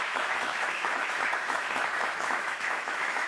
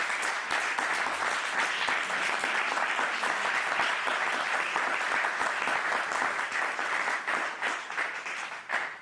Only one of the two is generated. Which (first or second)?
first